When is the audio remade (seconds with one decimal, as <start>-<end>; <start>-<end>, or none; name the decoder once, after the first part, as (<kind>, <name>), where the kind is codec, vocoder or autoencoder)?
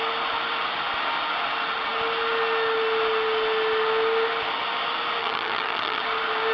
5.2-6.0 (vocoder, HiFi-GAN)